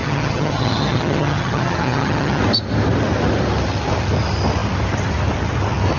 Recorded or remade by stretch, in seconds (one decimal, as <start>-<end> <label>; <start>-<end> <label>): 0.0-2.4 remade; 2.4-6.0 recorded